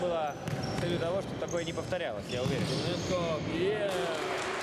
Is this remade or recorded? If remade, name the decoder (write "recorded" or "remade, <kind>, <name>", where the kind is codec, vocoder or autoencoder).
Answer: recorded